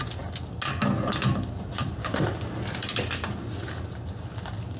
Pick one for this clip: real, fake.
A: real